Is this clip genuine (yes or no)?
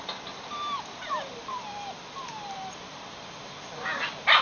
no